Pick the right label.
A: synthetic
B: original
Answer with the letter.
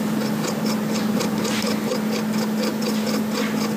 B